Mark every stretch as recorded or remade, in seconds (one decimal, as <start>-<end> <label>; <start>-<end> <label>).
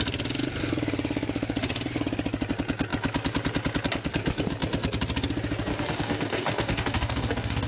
0.0-5.7 recorded; 5.7-7.7 remade